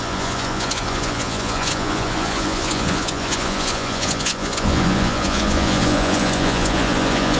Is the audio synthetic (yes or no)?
yes